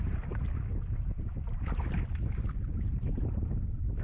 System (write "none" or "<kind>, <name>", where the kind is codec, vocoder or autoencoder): none